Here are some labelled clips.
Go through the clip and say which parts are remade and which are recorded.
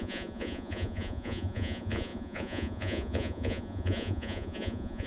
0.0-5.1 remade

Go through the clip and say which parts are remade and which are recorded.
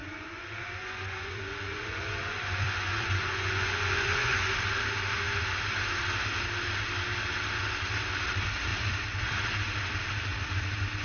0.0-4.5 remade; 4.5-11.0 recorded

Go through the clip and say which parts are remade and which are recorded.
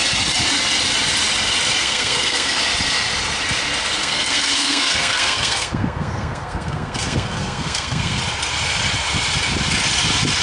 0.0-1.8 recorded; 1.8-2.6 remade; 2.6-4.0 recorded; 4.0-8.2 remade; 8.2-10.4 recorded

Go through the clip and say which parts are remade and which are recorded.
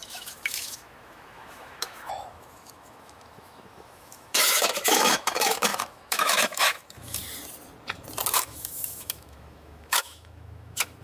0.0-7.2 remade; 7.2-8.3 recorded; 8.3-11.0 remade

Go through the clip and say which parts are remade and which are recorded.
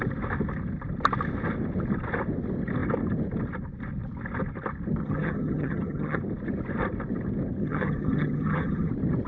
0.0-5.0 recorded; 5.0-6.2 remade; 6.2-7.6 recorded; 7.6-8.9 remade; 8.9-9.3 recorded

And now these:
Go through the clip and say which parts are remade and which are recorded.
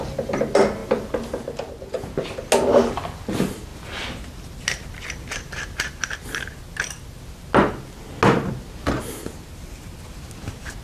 0.0-10.8 recorded